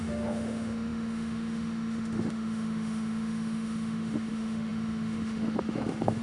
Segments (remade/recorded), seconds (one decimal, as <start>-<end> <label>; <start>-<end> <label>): 0.0-6.2 remade